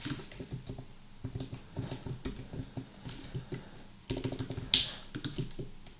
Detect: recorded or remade recorded